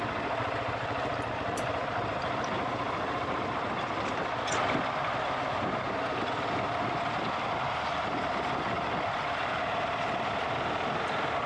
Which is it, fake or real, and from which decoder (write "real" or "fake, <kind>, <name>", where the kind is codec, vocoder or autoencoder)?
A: real